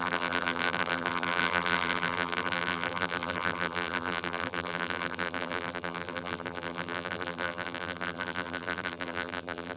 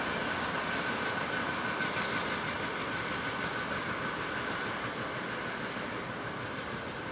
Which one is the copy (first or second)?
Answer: first